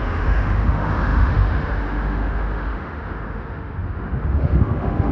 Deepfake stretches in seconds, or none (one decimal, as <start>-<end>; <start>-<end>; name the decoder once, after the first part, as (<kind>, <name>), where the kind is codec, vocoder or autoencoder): 0.0-5.1 (autoencoder, DAC-VAE)